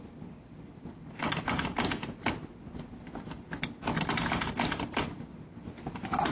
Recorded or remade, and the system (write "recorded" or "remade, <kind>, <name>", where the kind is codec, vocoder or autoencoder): recorded